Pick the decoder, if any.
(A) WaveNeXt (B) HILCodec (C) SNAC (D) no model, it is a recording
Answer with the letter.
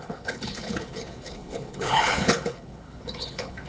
B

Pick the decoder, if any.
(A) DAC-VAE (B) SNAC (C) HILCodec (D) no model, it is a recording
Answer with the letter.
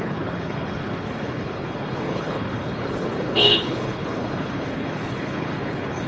C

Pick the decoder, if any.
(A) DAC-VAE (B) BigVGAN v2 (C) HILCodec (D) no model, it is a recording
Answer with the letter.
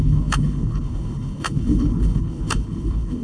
C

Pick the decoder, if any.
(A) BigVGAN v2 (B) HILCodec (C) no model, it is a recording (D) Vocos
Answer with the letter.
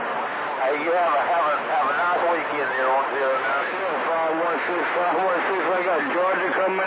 C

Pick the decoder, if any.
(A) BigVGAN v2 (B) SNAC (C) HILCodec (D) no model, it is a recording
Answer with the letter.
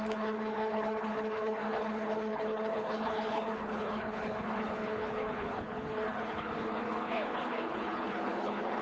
C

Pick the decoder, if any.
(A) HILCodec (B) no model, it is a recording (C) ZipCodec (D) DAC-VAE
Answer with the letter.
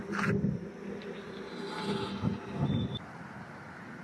B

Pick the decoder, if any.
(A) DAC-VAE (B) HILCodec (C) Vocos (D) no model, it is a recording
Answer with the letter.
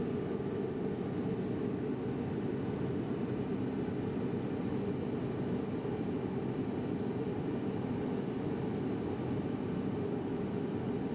D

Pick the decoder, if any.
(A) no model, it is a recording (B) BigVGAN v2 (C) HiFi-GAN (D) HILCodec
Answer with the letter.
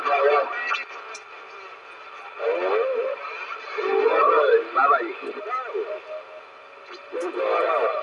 A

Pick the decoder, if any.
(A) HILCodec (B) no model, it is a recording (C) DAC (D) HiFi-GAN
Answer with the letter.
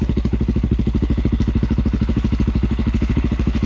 A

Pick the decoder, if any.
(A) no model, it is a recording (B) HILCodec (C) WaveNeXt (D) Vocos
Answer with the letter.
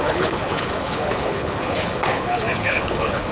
B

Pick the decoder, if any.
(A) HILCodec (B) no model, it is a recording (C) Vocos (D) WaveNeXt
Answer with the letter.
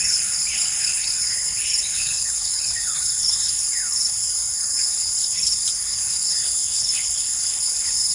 A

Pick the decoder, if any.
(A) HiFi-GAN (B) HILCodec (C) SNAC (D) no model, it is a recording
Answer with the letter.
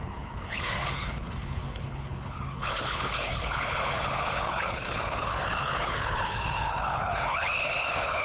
B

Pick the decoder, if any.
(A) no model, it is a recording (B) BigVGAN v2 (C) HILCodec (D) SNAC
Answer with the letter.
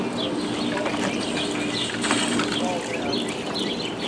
A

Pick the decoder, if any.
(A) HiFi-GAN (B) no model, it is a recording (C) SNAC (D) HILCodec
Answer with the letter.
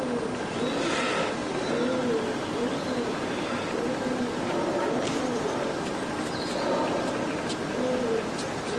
B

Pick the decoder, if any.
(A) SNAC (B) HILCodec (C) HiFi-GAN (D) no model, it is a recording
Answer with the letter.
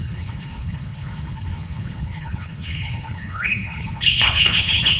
B